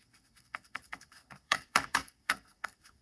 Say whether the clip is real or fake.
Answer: fake